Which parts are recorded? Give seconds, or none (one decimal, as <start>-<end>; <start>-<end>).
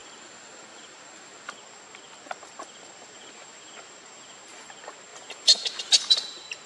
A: 0.0-2.4; 4.6-5.1; 5.8-6.7